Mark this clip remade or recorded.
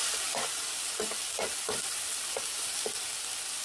recorded